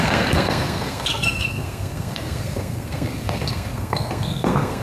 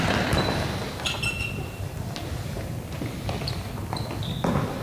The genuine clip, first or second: second